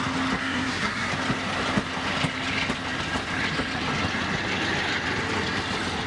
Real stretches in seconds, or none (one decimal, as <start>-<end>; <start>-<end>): 0.0-0.4; 1.1-6.1